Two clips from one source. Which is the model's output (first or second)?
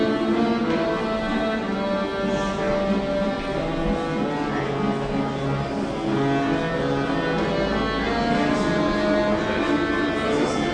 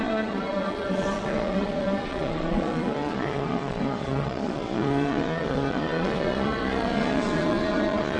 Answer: second